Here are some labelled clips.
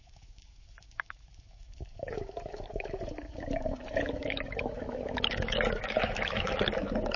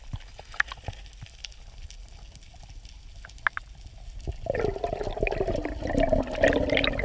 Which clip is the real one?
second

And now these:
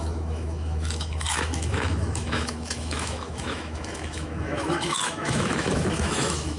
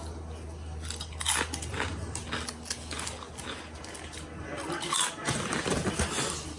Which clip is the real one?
second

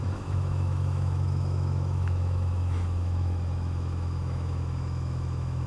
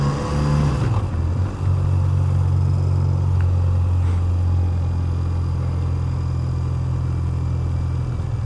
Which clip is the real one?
second